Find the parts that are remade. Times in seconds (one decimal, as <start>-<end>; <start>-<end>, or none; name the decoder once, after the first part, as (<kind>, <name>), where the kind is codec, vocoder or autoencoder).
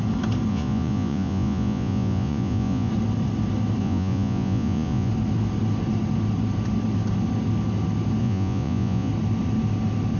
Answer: 0.5-2.9 (vocoder, Vocos); 3.8-5.1; 8.2-9.1